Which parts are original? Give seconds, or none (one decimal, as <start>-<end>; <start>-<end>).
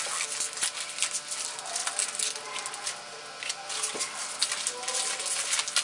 0.0-5.8